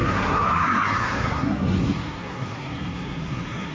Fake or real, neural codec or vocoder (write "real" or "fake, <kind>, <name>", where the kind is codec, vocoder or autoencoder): fake, codec, SNAC